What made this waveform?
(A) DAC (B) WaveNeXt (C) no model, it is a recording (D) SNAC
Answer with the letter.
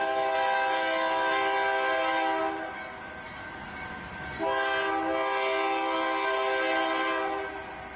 C